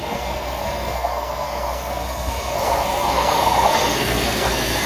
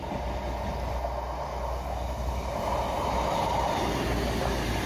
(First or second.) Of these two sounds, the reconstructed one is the first